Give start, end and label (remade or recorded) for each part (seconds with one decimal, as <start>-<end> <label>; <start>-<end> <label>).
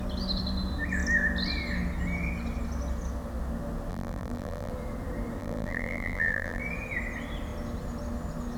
0.0-3.9 recorded; 3.9-4.7 remade; 4.7-5.4 recorded; 5.4-6.6 remade; 6.6-8.6 recorded